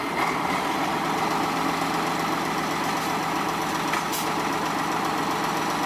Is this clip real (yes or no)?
yes